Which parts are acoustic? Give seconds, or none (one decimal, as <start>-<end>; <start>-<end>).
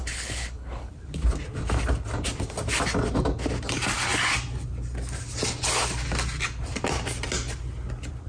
0.9-8.3